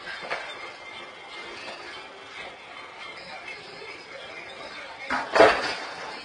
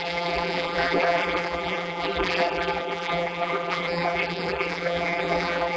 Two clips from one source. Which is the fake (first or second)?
second